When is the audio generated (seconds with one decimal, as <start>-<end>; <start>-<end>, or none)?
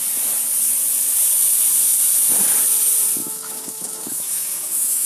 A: 3.2-5.1